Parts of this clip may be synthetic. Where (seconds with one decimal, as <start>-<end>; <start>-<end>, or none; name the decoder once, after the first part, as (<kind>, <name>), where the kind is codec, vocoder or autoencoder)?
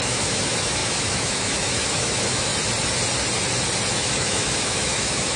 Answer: 0.0-2.5 (autoencoder, DAC-VAE); 3.9-5.4